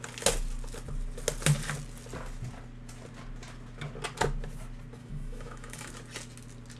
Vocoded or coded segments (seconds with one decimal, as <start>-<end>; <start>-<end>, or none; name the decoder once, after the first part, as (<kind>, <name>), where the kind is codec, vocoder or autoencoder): 5.0-5.9 (autoencoder, DAC-VAE)